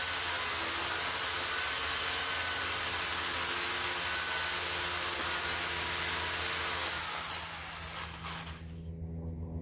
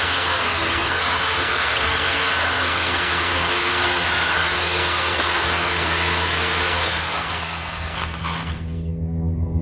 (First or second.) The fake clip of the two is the second